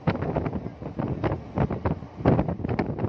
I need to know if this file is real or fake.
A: real